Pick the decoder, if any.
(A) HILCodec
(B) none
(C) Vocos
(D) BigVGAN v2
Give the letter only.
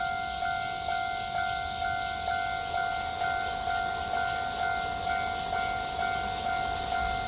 B